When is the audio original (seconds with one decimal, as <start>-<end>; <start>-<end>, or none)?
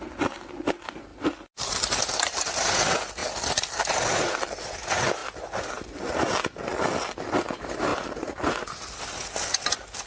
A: 0.0-10.1